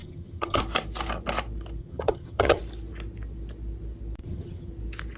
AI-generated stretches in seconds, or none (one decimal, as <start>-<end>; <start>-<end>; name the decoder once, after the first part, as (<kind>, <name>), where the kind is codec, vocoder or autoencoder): 0.0-0.6 (vocoder, HiFi-GAN); 1.8-2.6; 4.2-4.7